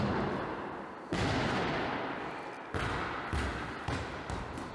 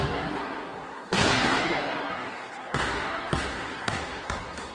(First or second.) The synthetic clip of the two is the second